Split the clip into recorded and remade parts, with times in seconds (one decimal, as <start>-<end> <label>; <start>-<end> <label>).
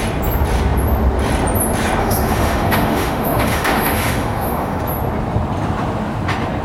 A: 0.0-2.0 recorded; 2.0-4.8 remade; 4.8-6.6 recorded